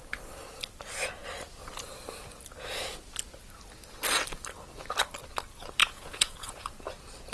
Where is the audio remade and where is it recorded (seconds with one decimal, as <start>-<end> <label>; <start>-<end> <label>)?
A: 0.0-5.8 recorded; 5.8-6.6 remade; 6.6-7.3 recorded